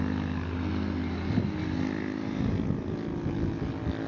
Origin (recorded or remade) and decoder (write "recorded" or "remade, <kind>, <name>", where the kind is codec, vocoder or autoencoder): recorded